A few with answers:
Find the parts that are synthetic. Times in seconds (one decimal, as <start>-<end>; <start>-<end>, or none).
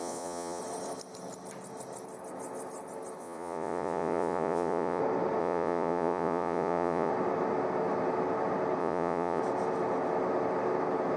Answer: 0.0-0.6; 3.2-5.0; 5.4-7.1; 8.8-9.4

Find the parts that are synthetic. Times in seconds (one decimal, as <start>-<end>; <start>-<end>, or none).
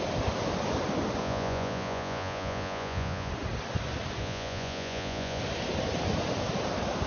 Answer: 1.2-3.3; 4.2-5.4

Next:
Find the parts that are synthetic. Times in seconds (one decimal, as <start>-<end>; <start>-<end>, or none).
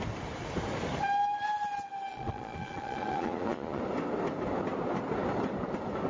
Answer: 2.1-3.8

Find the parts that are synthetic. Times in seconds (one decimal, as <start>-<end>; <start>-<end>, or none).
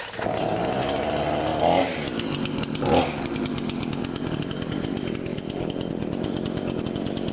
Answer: none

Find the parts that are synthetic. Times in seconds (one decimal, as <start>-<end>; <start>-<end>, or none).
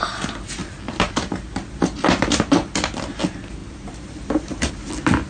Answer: none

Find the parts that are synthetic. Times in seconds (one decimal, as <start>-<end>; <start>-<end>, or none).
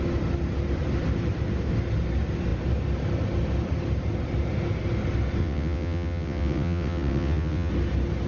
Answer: 5.4-7.7